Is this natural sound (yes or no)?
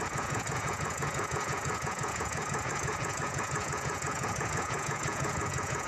no